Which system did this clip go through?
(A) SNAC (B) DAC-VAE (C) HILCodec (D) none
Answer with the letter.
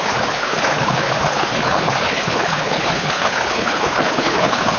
C